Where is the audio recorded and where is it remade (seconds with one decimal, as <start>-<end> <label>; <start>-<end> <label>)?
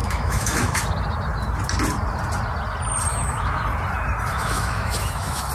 0.0-0.8 remade; 0.8-3.1 recorded; 3.1-3.6 remade; 3.6-4.3 recorded; 4.3-5.5 remade